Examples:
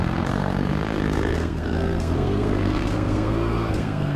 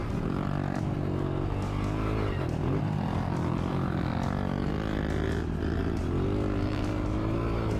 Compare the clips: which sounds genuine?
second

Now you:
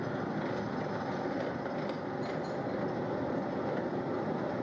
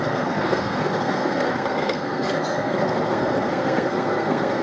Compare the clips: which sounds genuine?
first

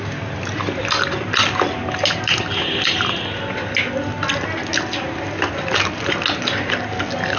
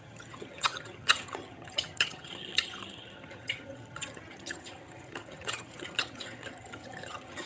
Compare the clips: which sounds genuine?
first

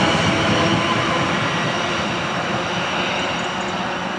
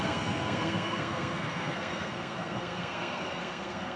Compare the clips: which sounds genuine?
first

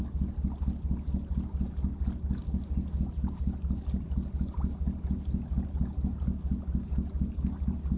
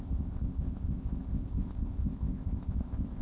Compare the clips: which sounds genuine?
first